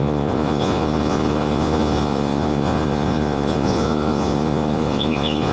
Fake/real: fake